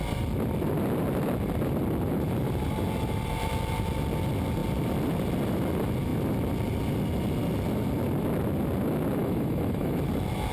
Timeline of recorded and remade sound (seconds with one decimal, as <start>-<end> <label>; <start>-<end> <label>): 0.0-9.2 recorded; 9.2-10.1 remade; 10.1-10.5 recorded